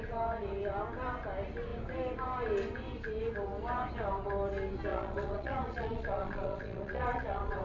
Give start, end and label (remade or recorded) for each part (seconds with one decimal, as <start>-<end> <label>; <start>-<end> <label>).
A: 0.0-4.9 recorded; 4.9-7.6 remade